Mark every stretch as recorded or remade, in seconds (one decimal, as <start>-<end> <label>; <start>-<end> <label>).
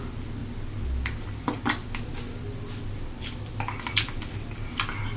0.0-5.2 recorded